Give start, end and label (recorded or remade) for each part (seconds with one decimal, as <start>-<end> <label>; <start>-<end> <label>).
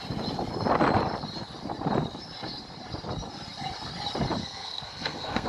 0.0-4.4 recorded; 4.4-5.5 remade